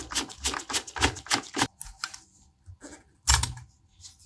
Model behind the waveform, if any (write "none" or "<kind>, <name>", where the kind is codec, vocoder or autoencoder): none